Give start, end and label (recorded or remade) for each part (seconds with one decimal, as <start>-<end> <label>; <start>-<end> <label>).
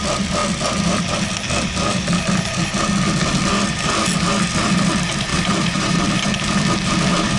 0.0-5.3 recorded; 5.3-6.0 remade; 6.0-7.4 recorded